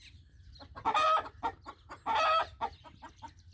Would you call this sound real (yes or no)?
yes